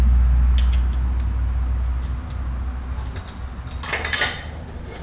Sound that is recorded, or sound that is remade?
recorded